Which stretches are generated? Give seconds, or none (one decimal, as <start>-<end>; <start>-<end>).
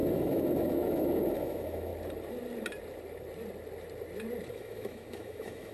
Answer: 0.0-1.9; 4.5-5.7